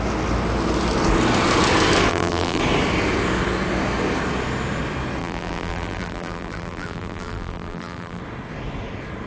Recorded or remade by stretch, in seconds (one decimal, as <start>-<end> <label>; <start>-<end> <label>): 0.0-2.1 recorded; 2.1-2.6 remade; 2.6-5.2 recorded; 5.2-8.2 remade; 8.2-9.3 recorded